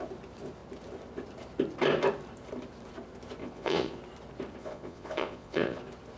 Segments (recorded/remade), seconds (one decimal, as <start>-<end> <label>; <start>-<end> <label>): 0.0-3.4 recorded; 3.4-4.0 remade; 4.0-4.6 recorded; 4.6-5.8 remade; 5.8-6.2 recorded